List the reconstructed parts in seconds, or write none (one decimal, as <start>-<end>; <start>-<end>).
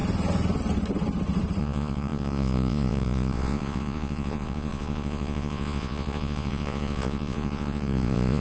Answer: 1.6-8.4